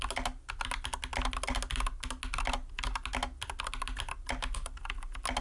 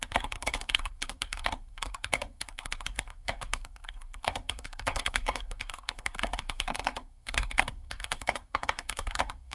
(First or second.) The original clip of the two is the first